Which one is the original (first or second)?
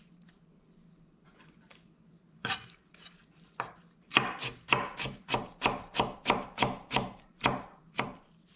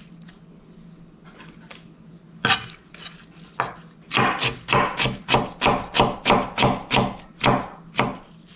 second